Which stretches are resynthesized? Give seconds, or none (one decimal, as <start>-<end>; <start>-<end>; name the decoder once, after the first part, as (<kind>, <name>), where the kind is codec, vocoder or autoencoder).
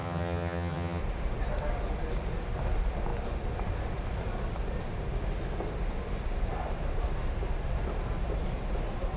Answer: 0.0-1.0 (vocoder, HiFi-GAN)